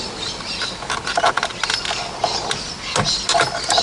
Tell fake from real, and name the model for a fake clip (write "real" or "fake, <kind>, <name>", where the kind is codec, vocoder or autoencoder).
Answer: real